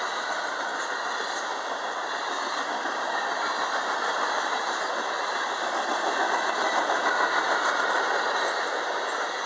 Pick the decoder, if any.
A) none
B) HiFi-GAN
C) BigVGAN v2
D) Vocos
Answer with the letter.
A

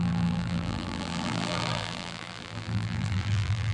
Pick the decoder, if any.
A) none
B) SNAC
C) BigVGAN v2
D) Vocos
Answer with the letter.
C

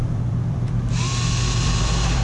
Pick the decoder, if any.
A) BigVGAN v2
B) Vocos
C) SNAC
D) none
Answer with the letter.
A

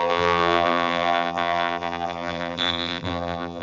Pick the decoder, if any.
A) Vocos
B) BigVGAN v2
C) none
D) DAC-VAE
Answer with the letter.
B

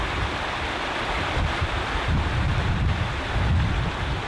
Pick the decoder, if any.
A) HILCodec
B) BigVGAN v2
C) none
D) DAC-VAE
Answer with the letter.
C